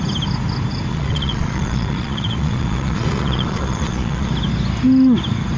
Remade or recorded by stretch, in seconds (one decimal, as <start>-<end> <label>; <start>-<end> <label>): 0.0-0.9 recorded; 0.9-4.3 remade; 4.3-5.6 recorded